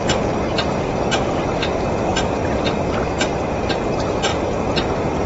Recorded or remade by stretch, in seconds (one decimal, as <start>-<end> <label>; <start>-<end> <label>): 0.0-5.3 recorded

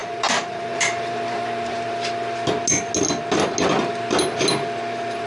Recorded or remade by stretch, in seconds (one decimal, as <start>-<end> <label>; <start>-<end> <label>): 0.0-2.1 remade; 2.1-5.3 recorded

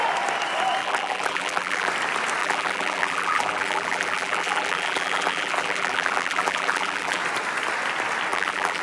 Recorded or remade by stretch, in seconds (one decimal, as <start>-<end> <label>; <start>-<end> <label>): 0.0-0.8 recorded; 0.8-1.9 remade; 1.9-2.4 recorded; 2.4-7.2 remade; 7.2-8.3 recorded; 8.3-8.8 remade

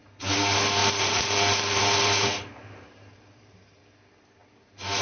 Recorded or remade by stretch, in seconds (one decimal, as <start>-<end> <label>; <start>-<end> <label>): 0.0-0.8 recorded; 0.8-3.8 remade; 3.8-5.0 recorded

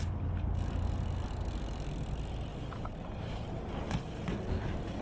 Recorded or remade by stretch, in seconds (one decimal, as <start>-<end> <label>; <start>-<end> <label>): 0.0-2.5 recorded; 2.5-3.7 remade; 3.7-5.0 recorded